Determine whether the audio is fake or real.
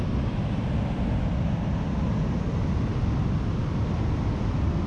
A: real